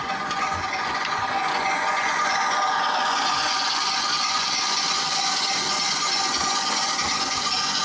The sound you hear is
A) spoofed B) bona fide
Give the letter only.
A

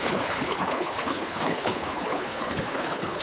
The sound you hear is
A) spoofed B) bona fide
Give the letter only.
A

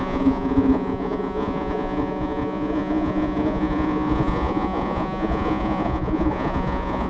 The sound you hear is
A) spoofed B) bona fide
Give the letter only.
A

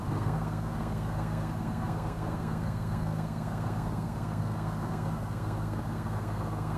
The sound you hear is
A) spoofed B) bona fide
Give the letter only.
A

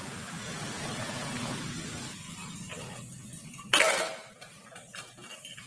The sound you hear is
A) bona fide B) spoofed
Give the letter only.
A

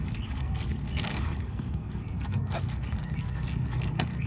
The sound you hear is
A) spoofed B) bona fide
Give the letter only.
A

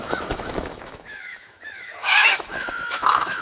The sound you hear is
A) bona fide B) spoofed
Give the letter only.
B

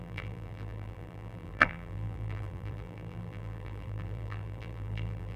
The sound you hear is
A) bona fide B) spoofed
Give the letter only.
B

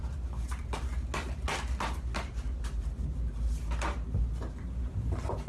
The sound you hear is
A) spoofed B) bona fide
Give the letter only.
B